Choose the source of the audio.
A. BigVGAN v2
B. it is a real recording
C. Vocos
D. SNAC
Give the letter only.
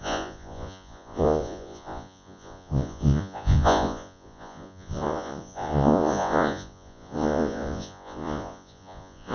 C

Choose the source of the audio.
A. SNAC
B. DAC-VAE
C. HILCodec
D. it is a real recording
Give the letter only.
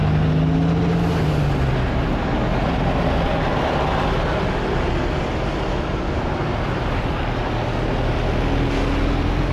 D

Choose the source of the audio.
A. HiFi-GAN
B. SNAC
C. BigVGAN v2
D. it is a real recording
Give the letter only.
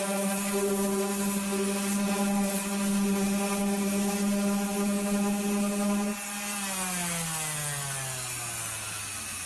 D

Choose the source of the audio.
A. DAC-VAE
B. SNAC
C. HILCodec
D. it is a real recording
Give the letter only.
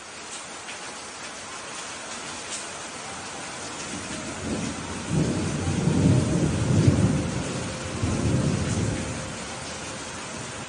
D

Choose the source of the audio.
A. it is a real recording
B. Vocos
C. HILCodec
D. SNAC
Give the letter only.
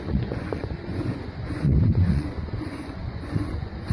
B